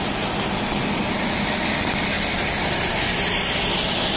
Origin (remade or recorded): recorded